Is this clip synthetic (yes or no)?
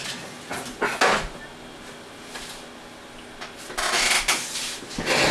no